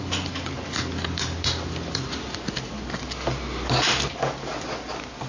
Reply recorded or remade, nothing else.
recorded